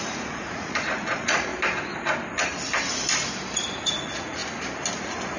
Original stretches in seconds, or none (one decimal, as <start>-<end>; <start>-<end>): 1.5-3.9; 4.4-5.0